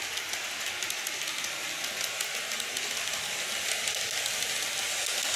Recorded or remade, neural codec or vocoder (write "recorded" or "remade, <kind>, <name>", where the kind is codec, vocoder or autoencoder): recorded